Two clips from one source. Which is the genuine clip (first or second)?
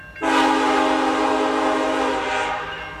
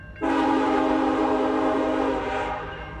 first